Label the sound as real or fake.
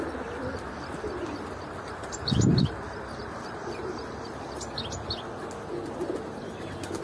real